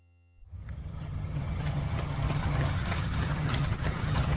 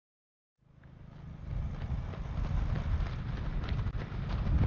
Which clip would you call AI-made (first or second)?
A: first